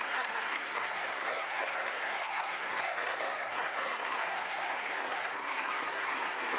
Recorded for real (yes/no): no